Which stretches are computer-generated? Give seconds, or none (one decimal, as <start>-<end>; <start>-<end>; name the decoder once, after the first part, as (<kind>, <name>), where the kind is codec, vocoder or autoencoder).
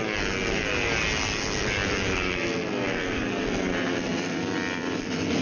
none